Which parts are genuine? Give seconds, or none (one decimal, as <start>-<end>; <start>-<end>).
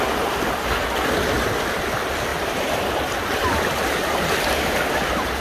0.0-0.8; 1.8-2.3; 4.9-5.4